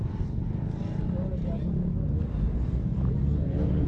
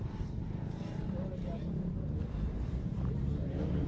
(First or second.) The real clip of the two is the first